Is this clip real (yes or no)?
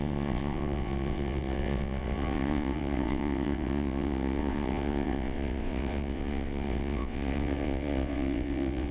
no